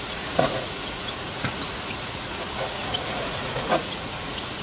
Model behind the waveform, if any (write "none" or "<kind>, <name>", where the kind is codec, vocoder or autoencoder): vocoder, Vocos